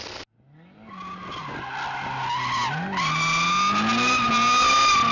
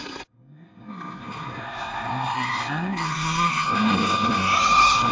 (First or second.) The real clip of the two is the first